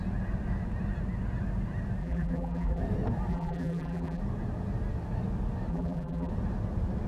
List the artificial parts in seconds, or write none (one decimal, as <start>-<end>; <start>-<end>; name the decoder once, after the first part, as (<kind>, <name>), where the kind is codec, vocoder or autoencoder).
2.0-2.8 (vocoder, BigVGAN v2); 3.3-4.2; 5.7-6.3